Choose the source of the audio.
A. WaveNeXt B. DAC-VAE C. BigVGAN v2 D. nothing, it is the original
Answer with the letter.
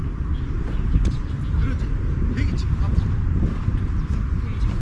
D